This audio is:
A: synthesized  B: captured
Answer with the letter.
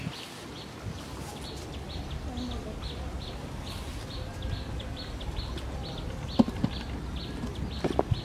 B